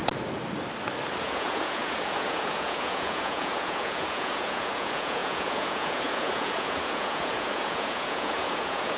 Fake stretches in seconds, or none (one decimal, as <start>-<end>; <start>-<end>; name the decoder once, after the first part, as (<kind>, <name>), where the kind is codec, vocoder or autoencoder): 1.2-9.0 (vocoder, Vocos)